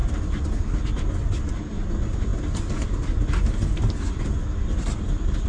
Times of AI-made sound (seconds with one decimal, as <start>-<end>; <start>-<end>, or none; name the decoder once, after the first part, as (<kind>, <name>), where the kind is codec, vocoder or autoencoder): none